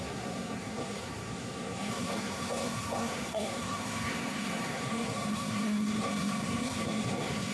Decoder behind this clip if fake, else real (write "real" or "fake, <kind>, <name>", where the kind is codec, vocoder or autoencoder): fake, codec, SNAC